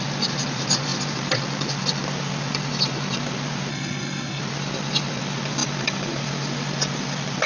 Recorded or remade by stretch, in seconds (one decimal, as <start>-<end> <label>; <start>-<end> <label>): 0.0-3.7 recorded; 3.7-4.4 remade; 4.4-7.5 recorded

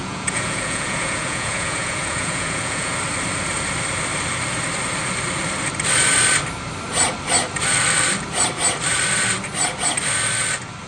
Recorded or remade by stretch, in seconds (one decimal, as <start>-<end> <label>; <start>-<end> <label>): 0.0-2.9 remade; 2.9-10.9 recorded

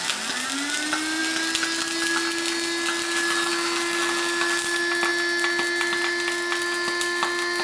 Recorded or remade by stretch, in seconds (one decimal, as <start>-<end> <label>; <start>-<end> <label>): 0.0-7.6 recorded